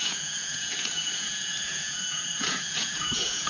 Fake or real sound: fake